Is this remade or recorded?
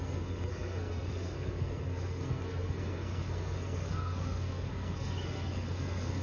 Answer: remade